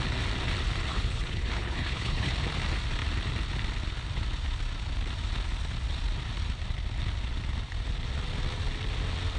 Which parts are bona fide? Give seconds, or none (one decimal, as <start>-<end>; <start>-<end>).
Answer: 0.0-0.9; 2.3-9.4